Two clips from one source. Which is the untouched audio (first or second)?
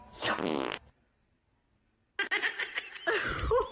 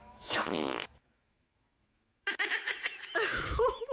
first